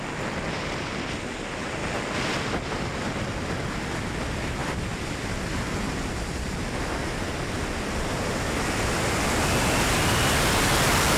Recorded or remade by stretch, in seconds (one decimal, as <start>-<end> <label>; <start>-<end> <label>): 0.0-1.8 recorded; 1.8-3.1 remade; 3.1-4.6 recorded; 4.6-5.6 remade; 5.6-11.2 recorded